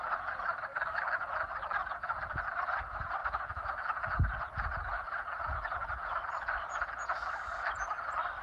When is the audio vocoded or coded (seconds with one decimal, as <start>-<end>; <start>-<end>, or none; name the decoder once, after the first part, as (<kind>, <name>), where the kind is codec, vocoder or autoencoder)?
0.7-1.2 (codec, DAC)